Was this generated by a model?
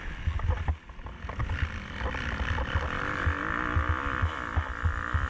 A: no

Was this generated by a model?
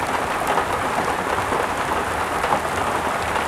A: no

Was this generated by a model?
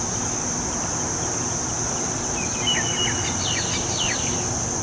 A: no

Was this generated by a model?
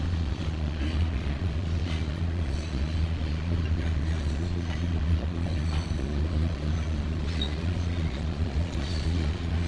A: yes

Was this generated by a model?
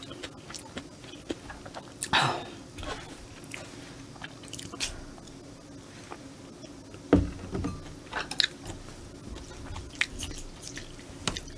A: no